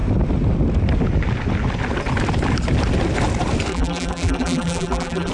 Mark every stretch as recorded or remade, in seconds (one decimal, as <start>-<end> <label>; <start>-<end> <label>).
0.0-3.7 recorded; 3.7-5.3 remade